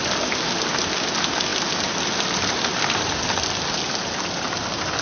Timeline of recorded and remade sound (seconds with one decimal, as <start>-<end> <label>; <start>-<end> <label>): 0.0-5.0 recorded